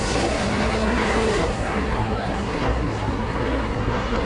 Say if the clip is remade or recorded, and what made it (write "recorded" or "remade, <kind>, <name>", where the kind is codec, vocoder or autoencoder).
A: remade, codec, SNAC